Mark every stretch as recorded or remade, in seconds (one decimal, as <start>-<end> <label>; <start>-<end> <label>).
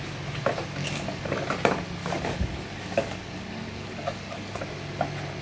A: 0.0-0.8 recorded; 0.8-1.5 remade; 1.5-2.0 recorded; 2.0-4.6 remade; 4.6-5.4 recorded